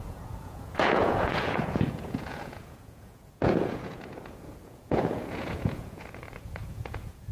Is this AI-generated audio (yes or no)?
yes